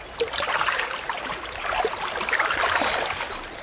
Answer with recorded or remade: recorded